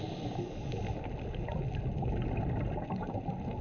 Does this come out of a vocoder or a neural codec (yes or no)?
no